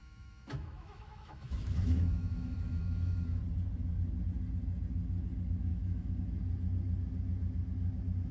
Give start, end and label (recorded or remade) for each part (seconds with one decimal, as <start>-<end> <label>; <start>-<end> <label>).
0.0-3.4 remade; 3.4-5.7 recorded; 5.7-6.2 remade; 6.2-8.3 recorded